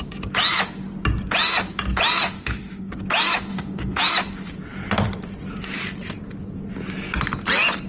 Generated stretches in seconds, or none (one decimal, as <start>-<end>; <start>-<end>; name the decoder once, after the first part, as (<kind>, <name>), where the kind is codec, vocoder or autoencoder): 2.2-2.9 (autoencoder, DAC-VAE); 3.5-4.0